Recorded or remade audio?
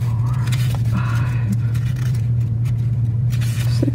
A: remade